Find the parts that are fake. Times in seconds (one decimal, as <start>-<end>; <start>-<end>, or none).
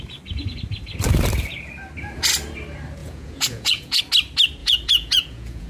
3.0-4.0; 4.6-5.7